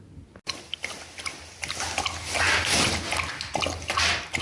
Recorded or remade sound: recorded